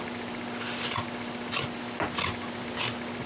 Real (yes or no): yes